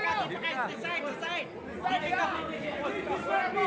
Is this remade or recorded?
recorded